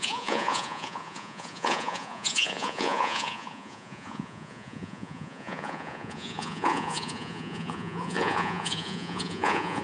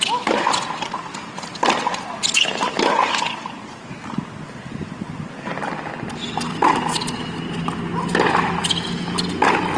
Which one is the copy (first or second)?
first